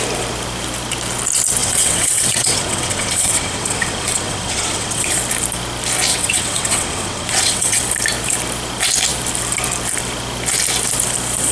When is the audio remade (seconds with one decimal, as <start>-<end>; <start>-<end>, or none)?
1.6-5.1; 6.1-7.8